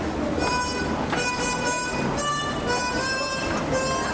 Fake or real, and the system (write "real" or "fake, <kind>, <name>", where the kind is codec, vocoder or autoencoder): real